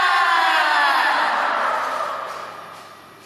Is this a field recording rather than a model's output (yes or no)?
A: no